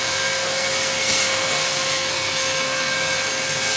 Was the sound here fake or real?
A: fake